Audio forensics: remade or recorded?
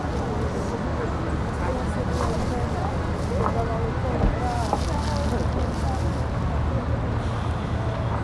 recorded